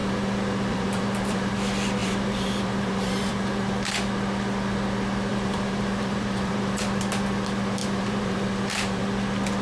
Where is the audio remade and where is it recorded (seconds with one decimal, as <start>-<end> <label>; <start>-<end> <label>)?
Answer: 0.0-1.5 remade; 1.5-2.0 recorded; 2.0-3.7 remade; 3.7-5.3 recorded; 5.3-7.0 remade; 7.0-7.8 recorded; 7.8-9.0 remade; 9.0-9.6 recorded